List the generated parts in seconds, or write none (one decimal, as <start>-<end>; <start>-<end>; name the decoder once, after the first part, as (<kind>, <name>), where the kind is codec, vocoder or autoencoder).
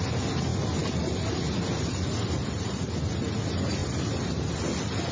none